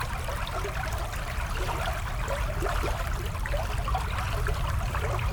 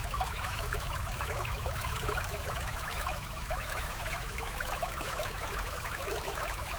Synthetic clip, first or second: second